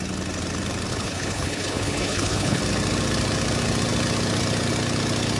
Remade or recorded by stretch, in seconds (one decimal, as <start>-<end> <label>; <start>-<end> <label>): 0.0-0.9 recorded; 0.9-2.6 remade; 2.6-5.4 recorded